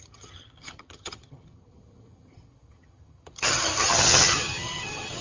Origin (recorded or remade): remade